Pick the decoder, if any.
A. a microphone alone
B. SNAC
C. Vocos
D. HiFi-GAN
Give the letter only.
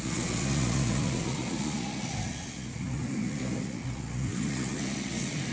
C